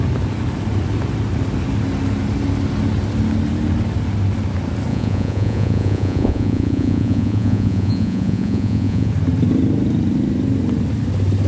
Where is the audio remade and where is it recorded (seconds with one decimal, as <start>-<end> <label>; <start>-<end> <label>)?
0.0-4.9 recorded; 4.9-9.1 remade; 9.1-11.5 recorded